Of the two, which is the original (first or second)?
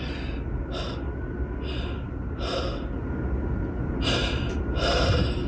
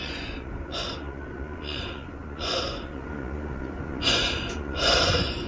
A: first